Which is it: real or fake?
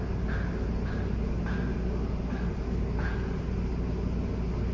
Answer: real